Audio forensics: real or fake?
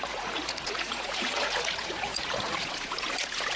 fake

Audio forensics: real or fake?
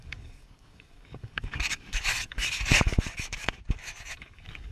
fake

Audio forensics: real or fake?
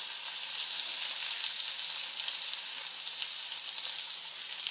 real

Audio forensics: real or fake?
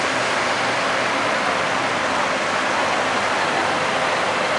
real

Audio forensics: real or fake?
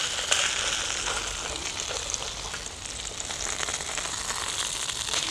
real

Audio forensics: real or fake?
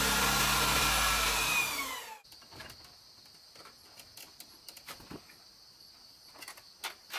real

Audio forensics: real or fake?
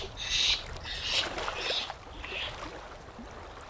real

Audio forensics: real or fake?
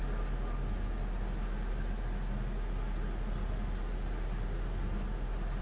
real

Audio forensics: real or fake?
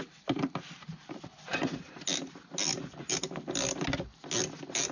real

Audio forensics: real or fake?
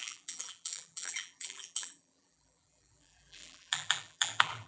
fake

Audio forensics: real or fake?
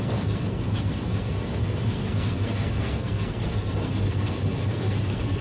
fake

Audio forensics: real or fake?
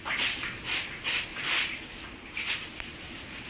real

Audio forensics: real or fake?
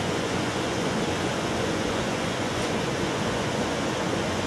fake